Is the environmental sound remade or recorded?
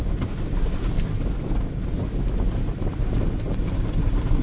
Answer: recorded